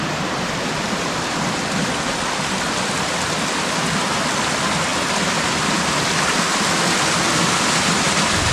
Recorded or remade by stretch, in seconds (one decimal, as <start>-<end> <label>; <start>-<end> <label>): 0.0-8.5 recorded